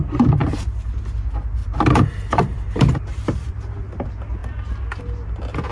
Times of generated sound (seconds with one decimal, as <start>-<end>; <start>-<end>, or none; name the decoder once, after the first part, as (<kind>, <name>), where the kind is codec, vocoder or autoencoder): 0.4-1.0 (vocoder, BigVGAN v2); 1.6-3.7